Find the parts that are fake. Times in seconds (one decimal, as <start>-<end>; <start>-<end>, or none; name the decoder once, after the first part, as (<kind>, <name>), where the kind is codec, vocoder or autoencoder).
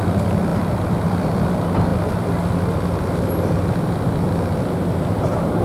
0.5-1.5 (vocoder, BigVGAN v2)